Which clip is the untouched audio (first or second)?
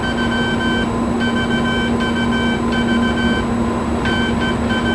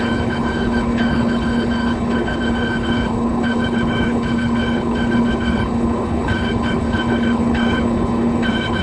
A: first